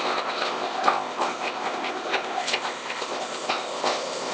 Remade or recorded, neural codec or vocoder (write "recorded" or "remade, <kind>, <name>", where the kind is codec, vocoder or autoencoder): remade, codec, ZipCodec